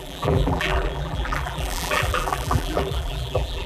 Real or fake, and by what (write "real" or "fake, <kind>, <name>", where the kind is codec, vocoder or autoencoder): fake, vocoder, BigVGAN v2